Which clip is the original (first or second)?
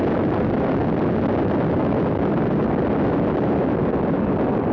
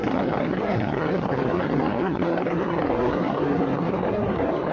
first